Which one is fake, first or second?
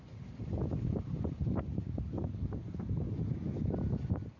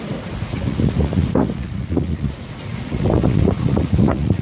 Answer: second